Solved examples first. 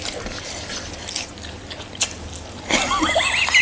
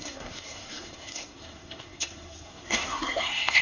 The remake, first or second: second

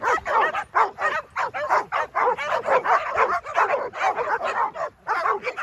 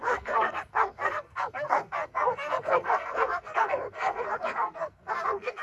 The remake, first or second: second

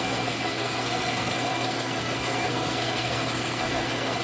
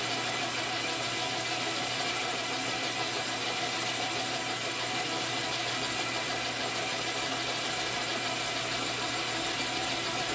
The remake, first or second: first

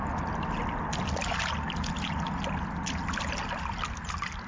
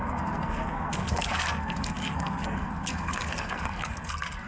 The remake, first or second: second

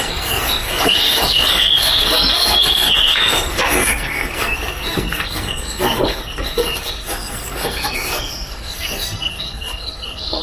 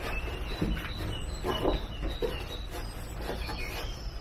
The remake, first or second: first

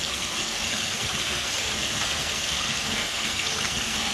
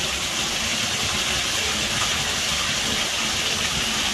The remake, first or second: first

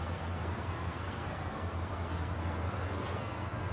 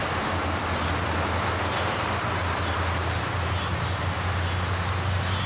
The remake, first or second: first